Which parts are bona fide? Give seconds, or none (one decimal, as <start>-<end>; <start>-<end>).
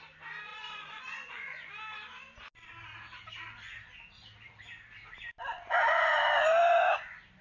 0.0-0.5; 1.7-7.4